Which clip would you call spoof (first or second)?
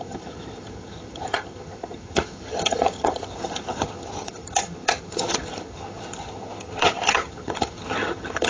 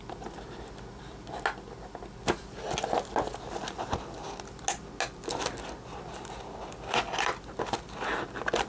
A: first